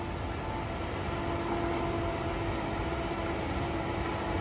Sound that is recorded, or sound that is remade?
recorded